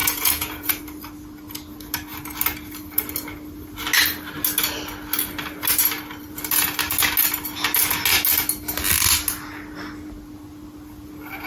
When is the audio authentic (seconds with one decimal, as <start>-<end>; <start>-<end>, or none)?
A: 0.7-11.5